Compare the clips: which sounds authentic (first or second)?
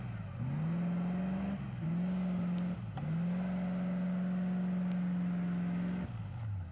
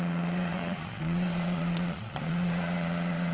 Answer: first